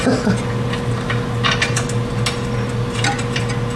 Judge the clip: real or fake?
real